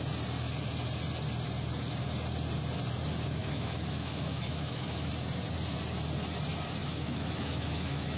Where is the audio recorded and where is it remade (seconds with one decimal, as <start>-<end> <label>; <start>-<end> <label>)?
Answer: 0.0-3.4 recorded; 3.4-5.1 remade; 5.1-6.8 recorded; 6.8-8.2 remade